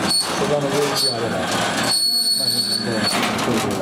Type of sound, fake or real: real